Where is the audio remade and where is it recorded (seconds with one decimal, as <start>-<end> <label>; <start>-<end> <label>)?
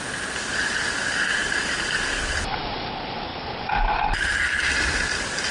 0.0-5.5 recorded